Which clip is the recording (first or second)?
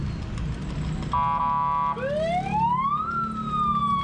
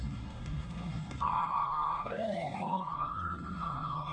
first